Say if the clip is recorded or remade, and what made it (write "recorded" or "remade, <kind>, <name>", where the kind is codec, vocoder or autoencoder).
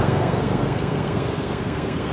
remade, codec, SNAC